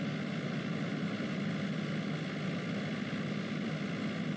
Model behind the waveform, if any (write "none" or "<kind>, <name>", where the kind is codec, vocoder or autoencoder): none